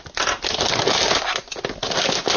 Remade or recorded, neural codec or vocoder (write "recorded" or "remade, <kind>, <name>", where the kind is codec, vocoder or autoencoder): recorded